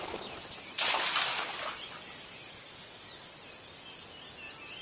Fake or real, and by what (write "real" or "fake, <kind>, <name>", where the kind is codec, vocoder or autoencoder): real